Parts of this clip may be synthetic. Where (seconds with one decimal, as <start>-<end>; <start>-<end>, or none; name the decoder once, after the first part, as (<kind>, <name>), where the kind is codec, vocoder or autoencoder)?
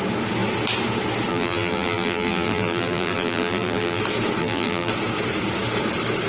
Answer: 1.3-4.0 (vocoder, BigVGAN v2); 4.4-4.9